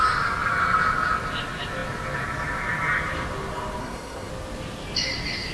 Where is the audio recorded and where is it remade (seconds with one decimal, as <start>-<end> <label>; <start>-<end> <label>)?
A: 0.0-3.8 recorded; 3.8-4.3 remade; 4.3-5.5 recorded